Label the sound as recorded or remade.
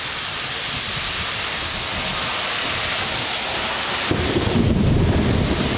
recorded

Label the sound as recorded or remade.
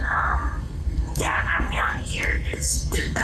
remade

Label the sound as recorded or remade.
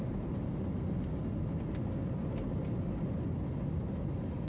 recorded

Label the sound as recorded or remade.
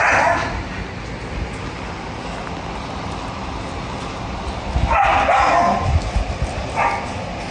recorded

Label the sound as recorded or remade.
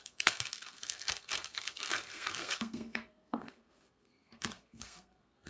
remade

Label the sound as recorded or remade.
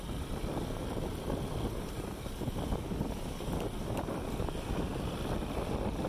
recorded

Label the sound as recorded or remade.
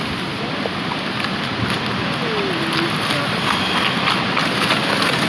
recorded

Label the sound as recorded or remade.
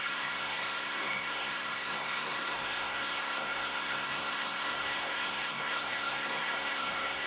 remade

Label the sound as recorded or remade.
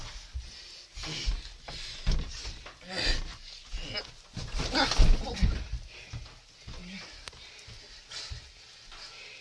recorded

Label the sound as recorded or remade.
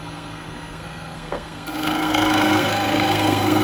remade